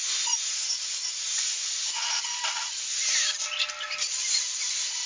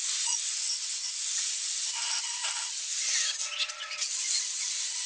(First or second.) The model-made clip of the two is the second